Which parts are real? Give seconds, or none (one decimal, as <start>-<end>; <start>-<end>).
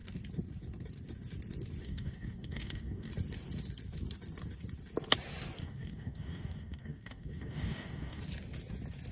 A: 0.0-1.8; 3.1-5.6; 8.2-9.1